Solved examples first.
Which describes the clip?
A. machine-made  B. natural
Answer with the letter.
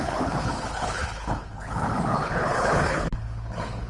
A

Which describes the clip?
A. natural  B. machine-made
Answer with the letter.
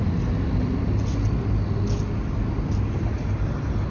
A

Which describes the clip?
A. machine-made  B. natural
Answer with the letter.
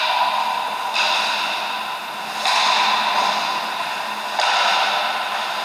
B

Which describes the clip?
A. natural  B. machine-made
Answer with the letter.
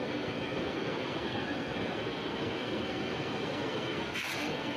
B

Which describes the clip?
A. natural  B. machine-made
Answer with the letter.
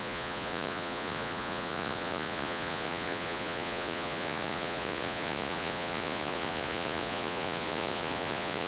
B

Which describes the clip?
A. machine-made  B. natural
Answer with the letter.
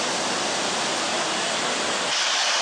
B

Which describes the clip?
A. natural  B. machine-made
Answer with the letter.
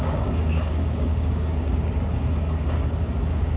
B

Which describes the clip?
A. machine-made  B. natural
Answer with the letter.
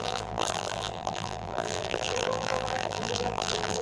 A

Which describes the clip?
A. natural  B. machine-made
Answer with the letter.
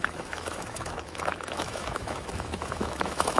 B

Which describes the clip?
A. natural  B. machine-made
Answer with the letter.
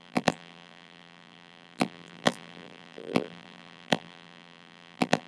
B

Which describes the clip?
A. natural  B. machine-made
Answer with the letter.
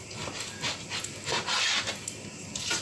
A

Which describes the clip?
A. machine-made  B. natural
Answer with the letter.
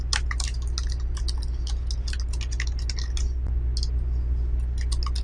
B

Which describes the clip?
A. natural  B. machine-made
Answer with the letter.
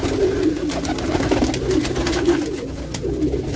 A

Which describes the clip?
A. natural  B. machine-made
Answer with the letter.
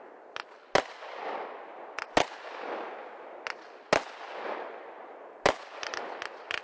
A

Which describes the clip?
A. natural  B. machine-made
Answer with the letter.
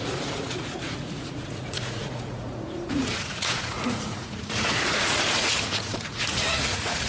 B